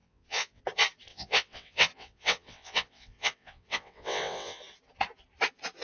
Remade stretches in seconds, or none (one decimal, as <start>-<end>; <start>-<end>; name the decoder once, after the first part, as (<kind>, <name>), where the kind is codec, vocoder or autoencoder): 0.0-0.6 (vocoder, WaveNeXt); 1.1-4.6